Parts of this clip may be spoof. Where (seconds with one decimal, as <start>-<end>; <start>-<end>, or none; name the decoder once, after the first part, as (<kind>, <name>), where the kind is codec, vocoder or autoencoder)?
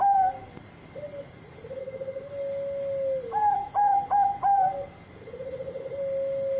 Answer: 1.8-2.3 (codec, SNAC)